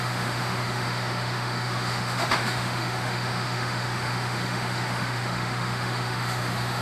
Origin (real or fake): fake